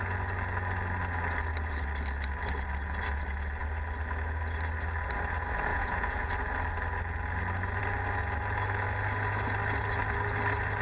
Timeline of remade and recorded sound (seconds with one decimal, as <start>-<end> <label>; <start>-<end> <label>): 0.0-5.7 recorded; 5.7-6.3 remade; 6.3-10.8 recorded